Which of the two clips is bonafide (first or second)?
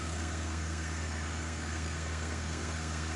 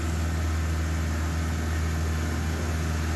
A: second